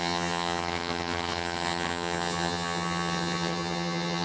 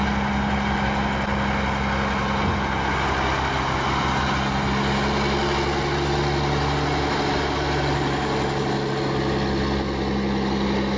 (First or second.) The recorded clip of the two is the second